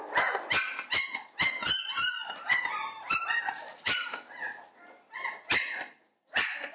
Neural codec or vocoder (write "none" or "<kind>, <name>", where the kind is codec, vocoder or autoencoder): none